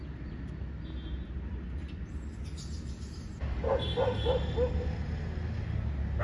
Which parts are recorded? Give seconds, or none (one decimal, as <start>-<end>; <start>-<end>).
0.0-6.2